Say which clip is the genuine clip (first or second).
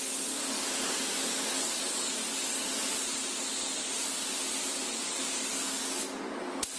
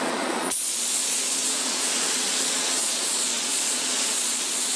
first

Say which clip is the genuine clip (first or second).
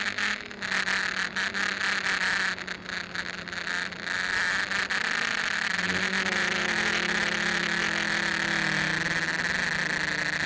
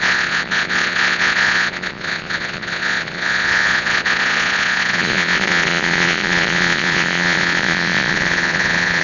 first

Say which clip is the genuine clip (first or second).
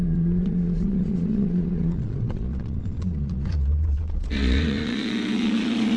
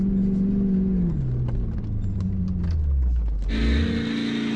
second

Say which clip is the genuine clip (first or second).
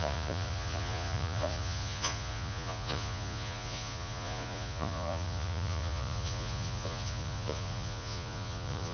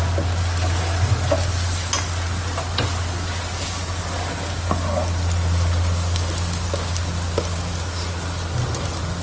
second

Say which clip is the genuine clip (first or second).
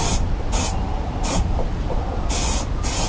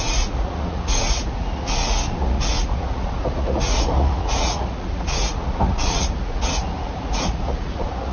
first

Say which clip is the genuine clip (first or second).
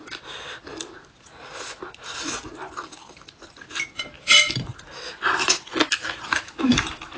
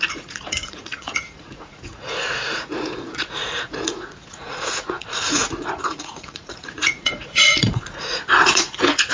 first